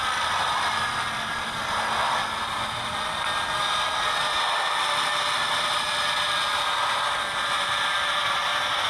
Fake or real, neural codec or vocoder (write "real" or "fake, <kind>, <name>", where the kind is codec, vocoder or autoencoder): real